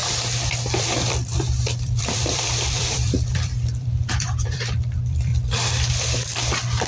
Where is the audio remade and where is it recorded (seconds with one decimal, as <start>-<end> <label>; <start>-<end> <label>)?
0.0-5.3 remade; 5.3-5.9 recorded; 5.9-6.9 remade